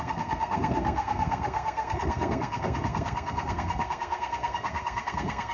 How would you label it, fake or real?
fake